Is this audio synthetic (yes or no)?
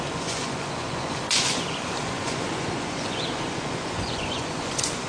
yes